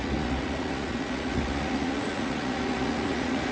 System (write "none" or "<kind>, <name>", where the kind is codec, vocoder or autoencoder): vocoder, Vocos